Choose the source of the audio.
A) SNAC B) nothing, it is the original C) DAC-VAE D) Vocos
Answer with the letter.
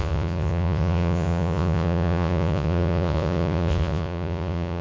D